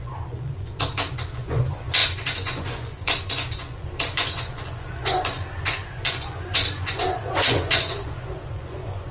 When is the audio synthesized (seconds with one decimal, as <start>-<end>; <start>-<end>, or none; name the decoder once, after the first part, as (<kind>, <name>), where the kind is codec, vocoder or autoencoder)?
0.0-9.1 (vocoder, Vocos)